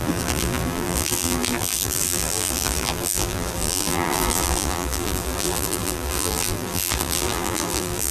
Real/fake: fake